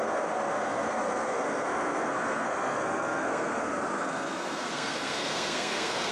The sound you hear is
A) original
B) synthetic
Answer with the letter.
B